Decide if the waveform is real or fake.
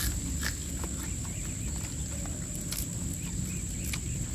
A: real